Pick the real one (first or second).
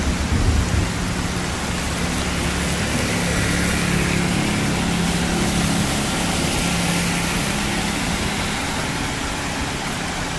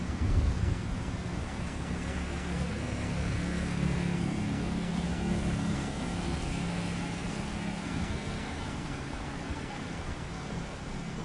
first